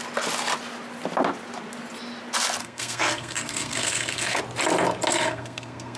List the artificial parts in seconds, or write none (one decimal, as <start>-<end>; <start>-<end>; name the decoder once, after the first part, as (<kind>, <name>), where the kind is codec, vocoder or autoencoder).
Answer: 2.6-4.4 (codec, SNAC); 5.1-6.0